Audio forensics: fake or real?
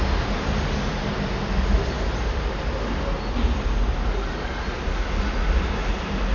real